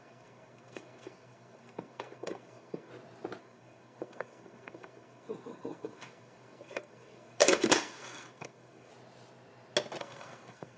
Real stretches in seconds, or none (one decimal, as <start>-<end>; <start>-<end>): 2.9-3.4; 8.9-10.0